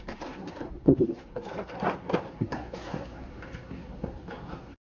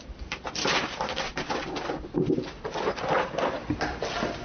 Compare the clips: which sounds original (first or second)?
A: second